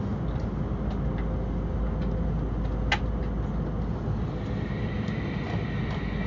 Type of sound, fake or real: real